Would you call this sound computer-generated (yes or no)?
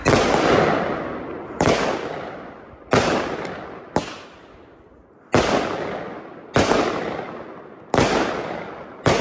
no